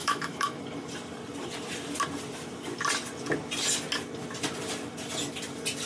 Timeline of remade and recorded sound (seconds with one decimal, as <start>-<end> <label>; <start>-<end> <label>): 0.0-0.6 remade; 0.6-5.9 recorded